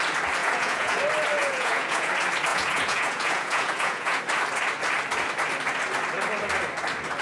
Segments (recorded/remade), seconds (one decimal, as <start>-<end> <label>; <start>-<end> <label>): 0.0-0.4 recorded; 0.4-1.0 remade; 1.0-1.4 recorded; 1.4-2.1 remade; 2.1-2.5 recorded; 2.5-4.2 remade; 4.2-7.2 recorded